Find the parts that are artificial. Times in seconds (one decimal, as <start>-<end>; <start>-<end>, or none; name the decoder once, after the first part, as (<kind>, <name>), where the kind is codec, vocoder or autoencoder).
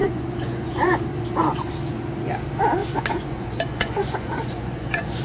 0.0-1.7 (vocoder, Vocos); 2.8-5.2